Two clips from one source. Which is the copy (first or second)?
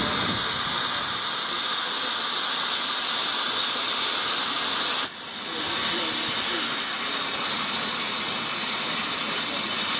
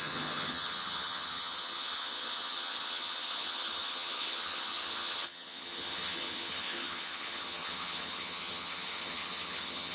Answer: second